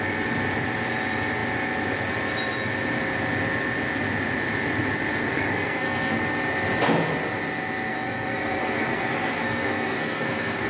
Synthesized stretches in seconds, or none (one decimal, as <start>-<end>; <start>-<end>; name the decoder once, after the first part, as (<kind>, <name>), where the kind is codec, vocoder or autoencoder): 5.2-6.2 (codec, SNAC); 7.9-10.7